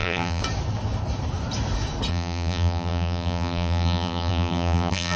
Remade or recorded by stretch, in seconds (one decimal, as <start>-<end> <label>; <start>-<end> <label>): 0.0-0.4 remade; 0.4-2.1 recorded; 2.1-5.2 remade